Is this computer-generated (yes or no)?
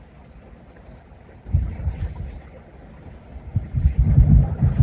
no